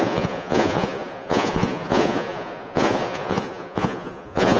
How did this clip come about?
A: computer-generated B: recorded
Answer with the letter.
A